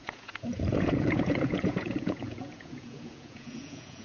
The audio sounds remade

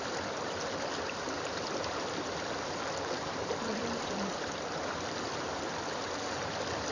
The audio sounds remade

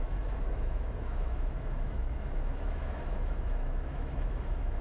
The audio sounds remade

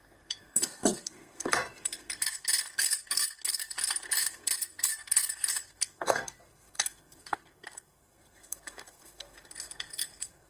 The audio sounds remade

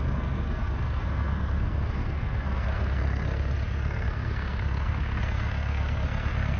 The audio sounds remade